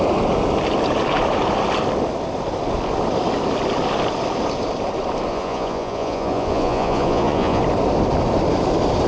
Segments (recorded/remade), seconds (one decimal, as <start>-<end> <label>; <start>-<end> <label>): 0.0-5.3 recorded; 5.3-7.6 remade; 7.6-9.1 recorded